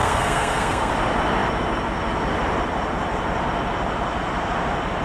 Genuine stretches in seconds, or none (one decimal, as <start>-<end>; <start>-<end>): 0.9-5.0